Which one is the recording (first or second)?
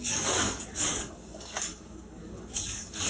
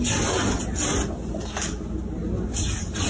second